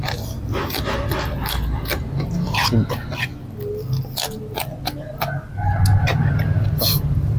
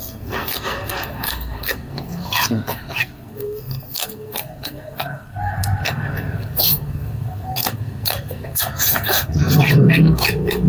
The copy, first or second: second